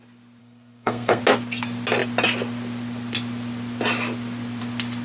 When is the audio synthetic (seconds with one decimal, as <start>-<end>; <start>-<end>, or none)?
0.4-1.2